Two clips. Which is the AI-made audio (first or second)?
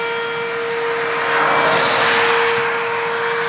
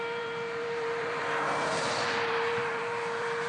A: second